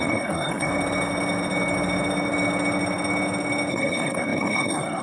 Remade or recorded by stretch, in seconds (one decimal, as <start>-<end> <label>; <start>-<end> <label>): 0.0-0.7 remade; 0.7-3.7 recorded; 3.7-5.0 remade